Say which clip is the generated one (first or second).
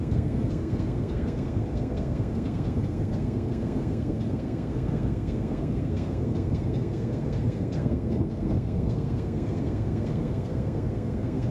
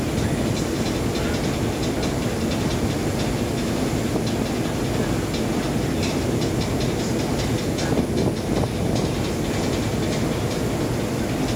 first